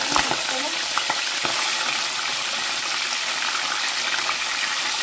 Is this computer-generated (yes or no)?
no